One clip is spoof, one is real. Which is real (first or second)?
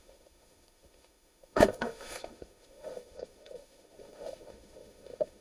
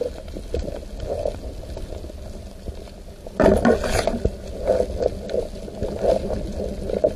second